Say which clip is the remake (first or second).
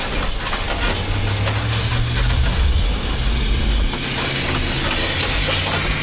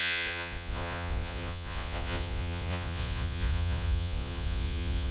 second